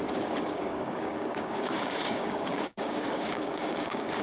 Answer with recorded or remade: remade